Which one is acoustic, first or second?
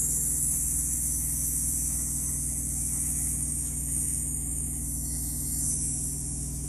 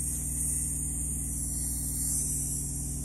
second